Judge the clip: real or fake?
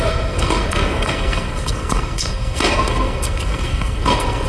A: fake